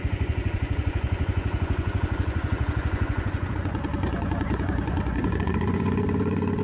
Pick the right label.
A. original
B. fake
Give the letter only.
B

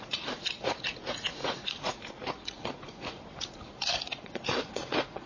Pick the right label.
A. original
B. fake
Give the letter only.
B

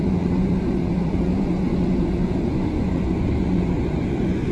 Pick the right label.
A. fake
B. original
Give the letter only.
A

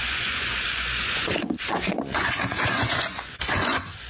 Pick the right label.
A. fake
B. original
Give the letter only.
A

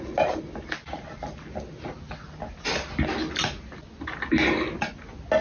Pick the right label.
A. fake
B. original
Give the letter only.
B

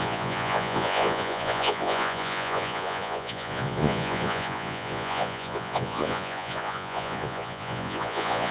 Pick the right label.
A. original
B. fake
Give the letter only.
B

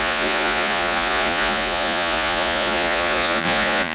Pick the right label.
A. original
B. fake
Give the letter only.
B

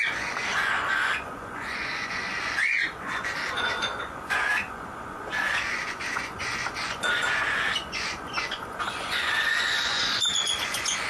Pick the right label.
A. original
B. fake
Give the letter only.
B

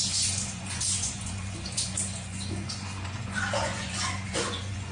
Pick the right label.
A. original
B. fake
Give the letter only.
B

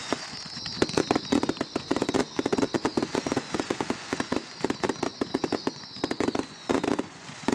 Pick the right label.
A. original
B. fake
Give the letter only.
B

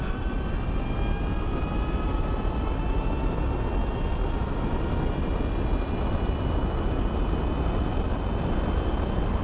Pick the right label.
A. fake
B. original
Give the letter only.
B